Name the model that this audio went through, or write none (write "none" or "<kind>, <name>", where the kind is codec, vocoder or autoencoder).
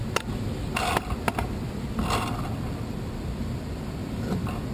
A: vocoder, BigVGAN v2